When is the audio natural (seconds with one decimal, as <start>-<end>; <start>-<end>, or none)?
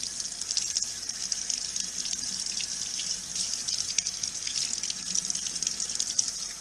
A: 0.0-6.6